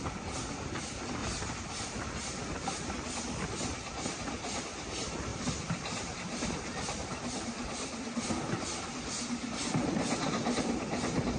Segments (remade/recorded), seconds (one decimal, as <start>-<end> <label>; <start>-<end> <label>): 0.0-1.2 recorded; 1.2-2.9 remade; 2.9-5.3 recorded; 5.3-8.3 remade; 8.3-11.4 recorded